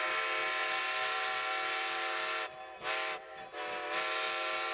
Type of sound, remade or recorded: recorded